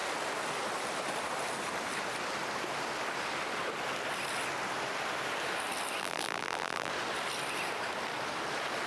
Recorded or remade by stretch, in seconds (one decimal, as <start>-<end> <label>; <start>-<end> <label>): 0.0-6.0 recorded; 6.0-6.9 remade; 6.9-8.9 recorded